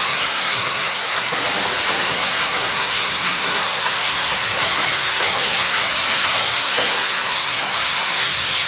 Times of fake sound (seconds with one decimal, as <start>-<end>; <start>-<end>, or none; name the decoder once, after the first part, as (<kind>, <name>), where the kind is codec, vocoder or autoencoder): 0.0-1.4 (codec, SNAC); 1.9-8.7